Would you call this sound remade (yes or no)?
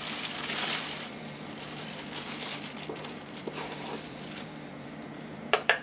yes